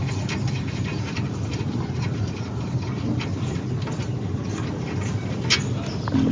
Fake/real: real